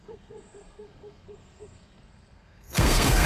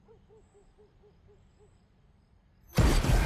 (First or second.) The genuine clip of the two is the second